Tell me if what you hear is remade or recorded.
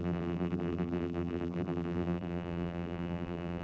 remade